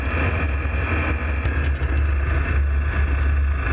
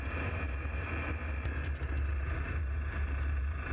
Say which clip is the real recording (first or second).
first